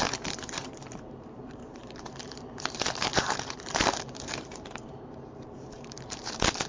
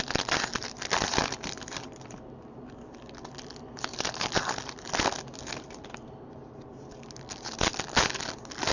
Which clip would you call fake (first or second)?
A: first